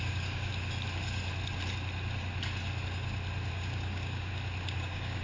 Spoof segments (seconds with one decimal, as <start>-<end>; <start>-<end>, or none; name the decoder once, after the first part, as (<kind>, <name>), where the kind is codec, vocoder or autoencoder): 0.0-0.5 (codec, DAC); 3.5-4.3; 4.8-5.2